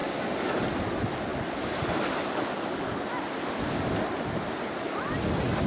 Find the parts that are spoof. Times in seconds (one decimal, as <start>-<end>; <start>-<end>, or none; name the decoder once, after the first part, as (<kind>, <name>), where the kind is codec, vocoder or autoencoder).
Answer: none